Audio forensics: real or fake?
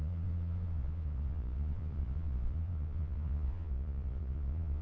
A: fake